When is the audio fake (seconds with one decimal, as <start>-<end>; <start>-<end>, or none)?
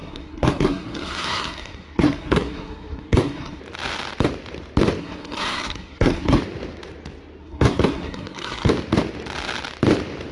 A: 0.0-3.6; 5.0-6.4; 7.4-8.7